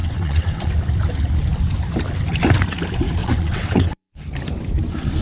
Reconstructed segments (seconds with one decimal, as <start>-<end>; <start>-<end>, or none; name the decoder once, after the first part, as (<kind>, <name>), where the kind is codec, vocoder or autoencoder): 0.0-0.7 (vocoder, WaveNeXt); 3.2-4.2